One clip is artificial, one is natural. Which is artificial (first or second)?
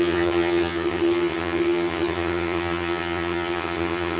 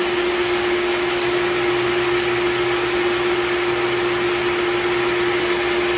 first